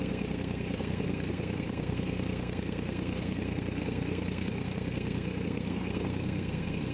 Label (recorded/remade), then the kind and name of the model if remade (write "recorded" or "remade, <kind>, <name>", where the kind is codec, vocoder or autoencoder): remade, codec, SNAC